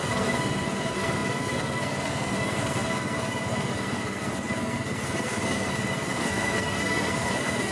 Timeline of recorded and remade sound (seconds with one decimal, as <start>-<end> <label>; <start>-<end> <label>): 0.0-7.7 remade